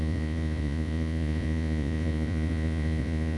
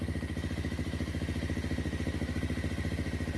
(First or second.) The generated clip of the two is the first